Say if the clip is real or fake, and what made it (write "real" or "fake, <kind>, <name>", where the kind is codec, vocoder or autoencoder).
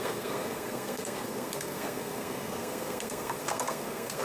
fake, codec, SNAC